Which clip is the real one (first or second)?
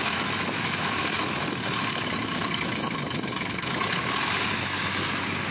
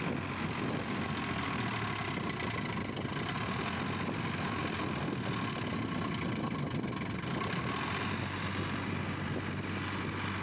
second